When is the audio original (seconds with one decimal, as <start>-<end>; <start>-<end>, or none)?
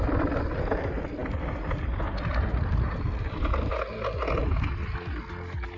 0.0-5.8